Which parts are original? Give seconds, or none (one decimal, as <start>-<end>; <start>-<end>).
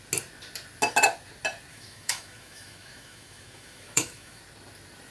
0.0-1.7; 4.4-5.1